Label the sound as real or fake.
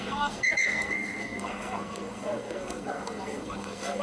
fake